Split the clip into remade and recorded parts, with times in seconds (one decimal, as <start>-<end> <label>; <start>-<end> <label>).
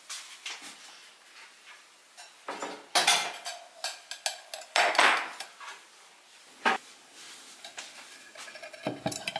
0.0-9.4 recorded